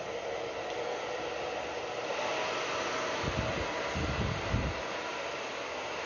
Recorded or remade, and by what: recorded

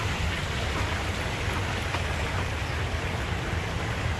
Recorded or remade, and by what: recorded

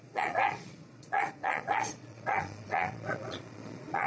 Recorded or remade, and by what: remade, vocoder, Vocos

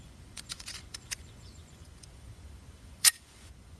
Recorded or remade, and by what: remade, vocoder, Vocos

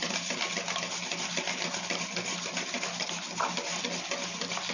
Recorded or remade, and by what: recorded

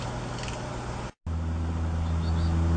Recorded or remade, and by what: recorded